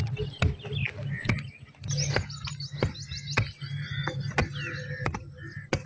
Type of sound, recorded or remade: recorded